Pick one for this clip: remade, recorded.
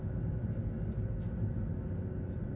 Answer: recorded